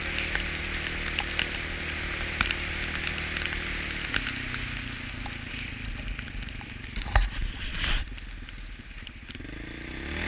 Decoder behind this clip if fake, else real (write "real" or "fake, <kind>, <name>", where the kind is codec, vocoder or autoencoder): real